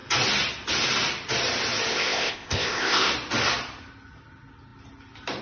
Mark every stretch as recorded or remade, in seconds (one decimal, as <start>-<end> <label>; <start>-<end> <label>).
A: 0.0-1.9 recorded; 1.9-3.1 remade; 3.1-5.4 recorded